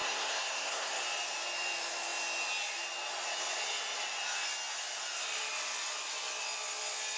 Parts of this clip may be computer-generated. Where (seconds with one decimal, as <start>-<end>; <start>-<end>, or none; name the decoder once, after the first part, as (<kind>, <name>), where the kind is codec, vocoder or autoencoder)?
0.0-1.0 (codec, SNAC)